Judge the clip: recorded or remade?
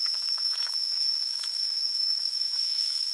remade